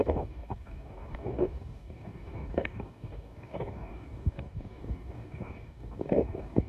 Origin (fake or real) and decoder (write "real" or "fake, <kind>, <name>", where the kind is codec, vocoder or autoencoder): fake, codec, DAC